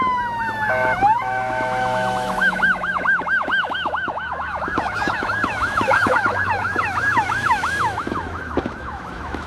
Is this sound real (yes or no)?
no